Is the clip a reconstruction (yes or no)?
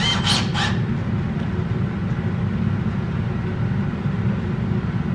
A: no